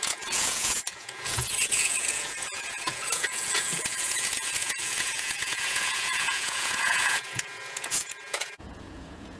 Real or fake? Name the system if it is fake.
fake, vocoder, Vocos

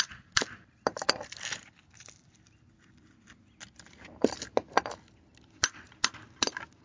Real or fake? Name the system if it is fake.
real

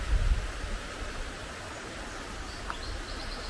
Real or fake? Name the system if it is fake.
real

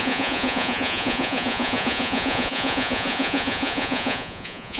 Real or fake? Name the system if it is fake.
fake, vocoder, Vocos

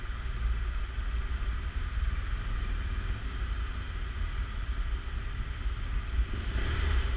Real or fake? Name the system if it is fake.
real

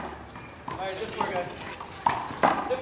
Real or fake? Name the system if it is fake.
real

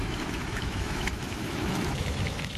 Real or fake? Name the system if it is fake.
fake, autoencoder, DAC-VAE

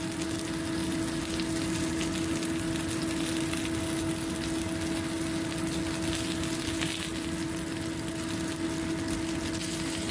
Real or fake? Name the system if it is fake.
real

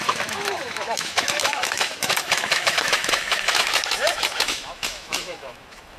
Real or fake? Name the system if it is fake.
fake, autoencoder, DAC-VAE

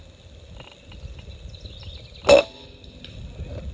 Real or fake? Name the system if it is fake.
real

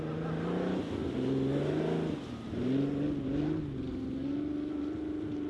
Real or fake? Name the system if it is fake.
real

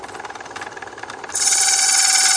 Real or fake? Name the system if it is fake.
real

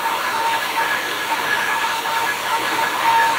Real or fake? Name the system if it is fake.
fake, autoencoder, DAC-VAE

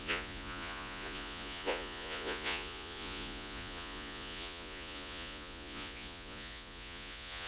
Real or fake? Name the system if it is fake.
fake, vocoder, Vocos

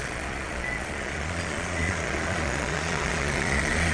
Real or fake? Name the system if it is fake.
fake, vocoder, Vocos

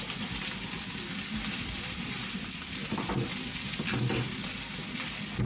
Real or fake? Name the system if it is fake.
real